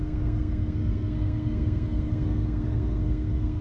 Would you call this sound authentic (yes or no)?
no